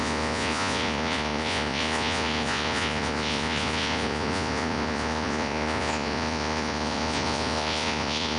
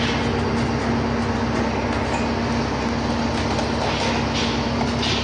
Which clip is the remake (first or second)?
first